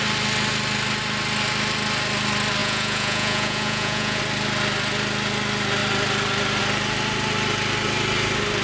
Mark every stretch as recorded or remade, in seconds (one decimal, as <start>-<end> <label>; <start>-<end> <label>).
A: 0.0-2.6 recorded; 2.6-4.2 remade; 4.2-8.6 recorded

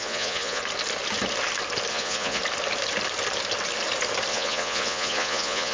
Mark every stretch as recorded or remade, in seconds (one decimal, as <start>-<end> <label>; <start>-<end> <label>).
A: 0.0-0.6 remade; 0.6-1.9 recorded; 1.9-2.4 remade; 2.4-4.3 recorded; 4.3-5.7 remade

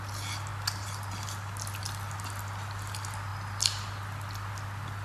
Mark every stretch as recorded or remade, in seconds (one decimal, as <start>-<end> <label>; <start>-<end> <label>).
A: 0.0-5.0 recorded

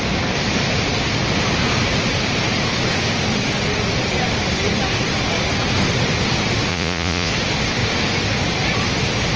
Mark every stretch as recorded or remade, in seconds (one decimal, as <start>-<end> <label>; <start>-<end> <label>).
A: 0.0-6.7 recorded; 6.7-7.3 remade; 7.3-9.4 recorded

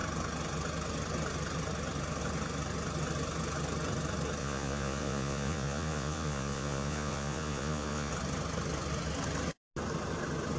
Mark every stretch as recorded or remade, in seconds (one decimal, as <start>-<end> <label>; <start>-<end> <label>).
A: 0.0-4.4 recorded; 4.4-8.1 remade; 8.1-10.6 recorded

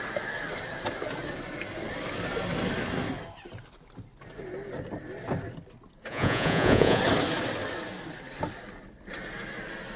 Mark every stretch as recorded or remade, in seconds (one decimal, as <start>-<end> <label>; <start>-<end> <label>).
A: 0.0-6.1 recorded; 6.1-7.0 remade; 7.0-10.0 recorded